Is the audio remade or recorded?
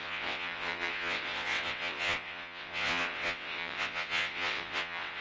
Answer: remade